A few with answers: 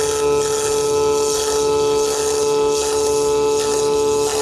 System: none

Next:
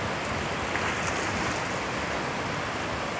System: none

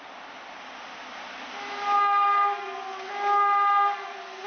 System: none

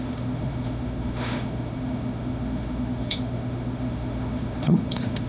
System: autoencoder, DAC-VAE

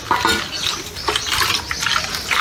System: none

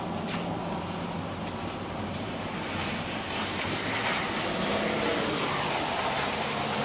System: none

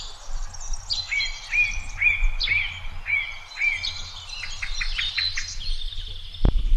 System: none